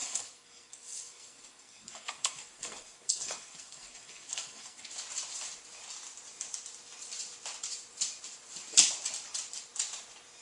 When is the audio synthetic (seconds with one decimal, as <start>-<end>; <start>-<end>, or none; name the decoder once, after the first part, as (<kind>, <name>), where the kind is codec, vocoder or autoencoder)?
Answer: 0.0-4.9 (codec, SNAC)